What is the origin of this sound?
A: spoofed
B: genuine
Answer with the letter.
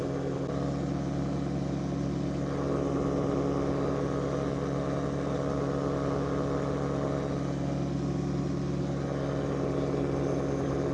B